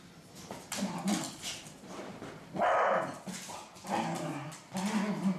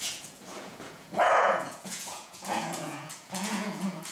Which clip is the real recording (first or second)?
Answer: first